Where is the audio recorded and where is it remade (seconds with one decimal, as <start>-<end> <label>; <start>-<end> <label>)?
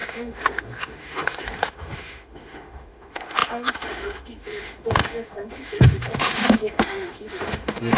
0.0-8.0 remade